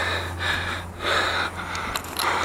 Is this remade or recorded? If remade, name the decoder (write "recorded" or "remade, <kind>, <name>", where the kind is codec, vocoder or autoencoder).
recorded